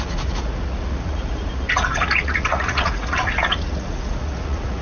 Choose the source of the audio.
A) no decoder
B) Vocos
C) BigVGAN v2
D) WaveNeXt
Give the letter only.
B